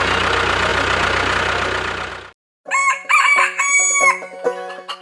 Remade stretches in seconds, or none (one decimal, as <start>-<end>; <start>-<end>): none